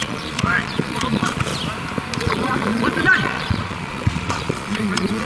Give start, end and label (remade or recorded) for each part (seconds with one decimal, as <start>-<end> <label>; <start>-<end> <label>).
0.0-1.5 remade; 1.5-2.2 recorded; 2.2-5.2 remade

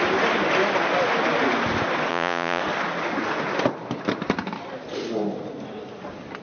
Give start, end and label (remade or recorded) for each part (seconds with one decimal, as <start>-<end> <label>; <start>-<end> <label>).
0.0-2.1 recorded; 2.1-2.6 remade; 2.6-6.4 recorded

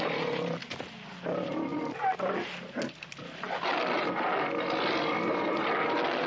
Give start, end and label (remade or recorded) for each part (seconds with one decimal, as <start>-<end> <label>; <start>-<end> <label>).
0.0-6.3 recorded

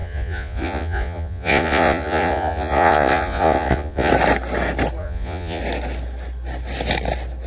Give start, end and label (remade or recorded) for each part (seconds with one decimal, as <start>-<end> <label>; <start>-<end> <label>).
0.0-4.1 remade; 4.1-5.0 recorded; 5.0-5.6 remade; 5.6-7.5 recorded